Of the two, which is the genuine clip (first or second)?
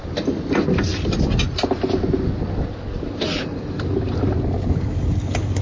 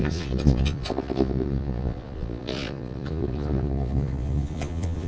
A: first